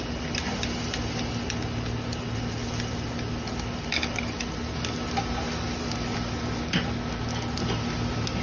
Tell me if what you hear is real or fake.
real